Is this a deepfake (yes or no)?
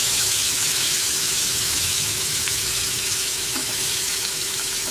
yes